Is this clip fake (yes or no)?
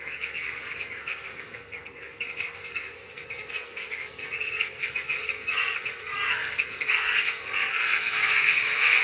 yes